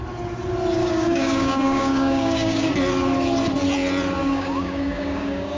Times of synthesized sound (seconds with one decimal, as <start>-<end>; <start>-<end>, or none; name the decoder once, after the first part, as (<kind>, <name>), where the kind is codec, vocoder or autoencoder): 0.8-2.7 (codec, DAC); 4.2-5.6